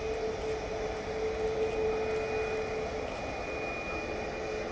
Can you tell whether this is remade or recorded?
recorded